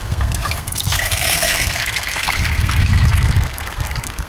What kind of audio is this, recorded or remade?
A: remade